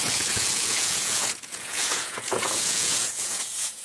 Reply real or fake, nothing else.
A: fake